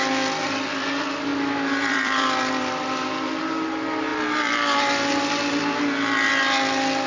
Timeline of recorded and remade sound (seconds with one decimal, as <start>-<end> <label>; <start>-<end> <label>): 0.0-1.3 recorded; 1.3-3.4 remade; 3.4-4.1 recorded; 4.1-5.5 remade; 5.5-7.1 recorded